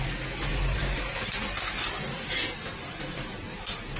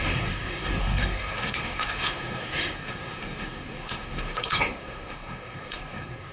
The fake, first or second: second